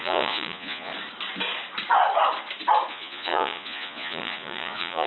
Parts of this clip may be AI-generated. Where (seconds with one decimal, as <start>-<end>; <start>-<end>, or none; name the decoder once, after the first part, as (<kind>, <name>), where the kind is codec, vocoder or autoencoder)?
0.0-0.9 (vocoder, Vocos); 2.9-5.1